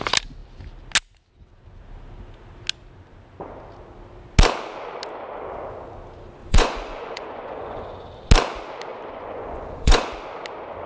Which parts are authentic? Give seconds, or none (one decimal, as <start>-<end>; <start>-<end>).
0.0-6.4; 7.8-8.9; 10.1-10.9